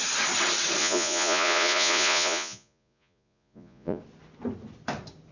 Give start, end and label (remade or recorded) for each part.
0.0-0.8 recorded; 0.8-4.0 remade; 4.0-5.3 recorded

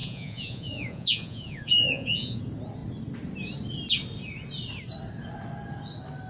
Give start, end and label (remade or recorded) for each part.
0.0-2.4 remade; 2.4-6.3 recorded